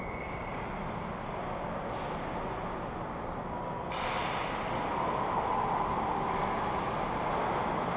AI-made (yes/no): no